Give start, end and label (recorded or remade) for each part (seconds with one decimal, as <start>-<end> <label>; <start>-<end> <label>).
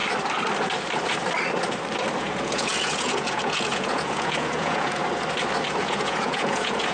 0.0-2.2 recorded; 2.2-5.0 remade; 5.0-5.8 recorded; 5.8-6.9 remade